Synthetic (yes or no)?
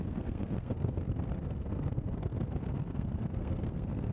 yes